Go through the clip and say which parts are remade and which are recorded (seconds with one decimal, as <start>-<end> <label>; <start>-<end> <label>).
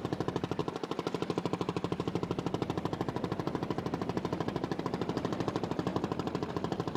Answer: 0.0-0.6 remade; 0.6-4.8 recorded; 4.8-5.9 remade; 5.9-6.5 recorded; 6.5-7.0 remade